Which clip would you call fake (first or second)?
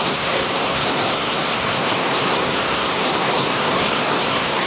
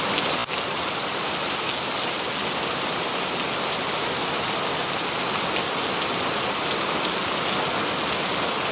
first